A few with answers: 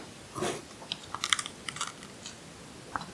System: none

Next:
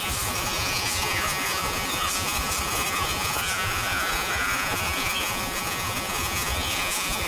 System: vocoder, Vocos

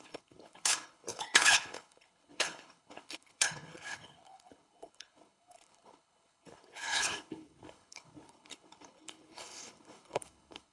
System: codec, HILCodec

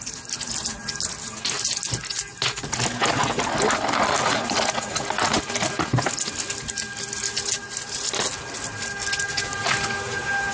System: none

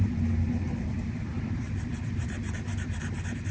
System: vocoder, BigVGAN v2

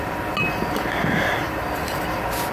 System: none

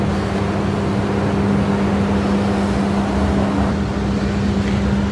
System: none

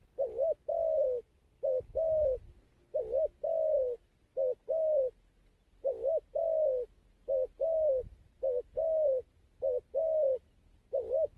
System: none